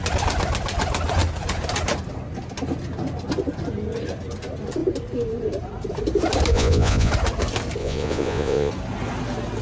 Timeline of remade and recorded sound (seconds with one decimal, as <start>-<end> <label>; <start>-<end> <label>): 0.0-6.5 recorded; 6.5-7.1 remade; 7.1-7.8 recorded; 7.8-8.7 remade; 8.7-9.6 recorded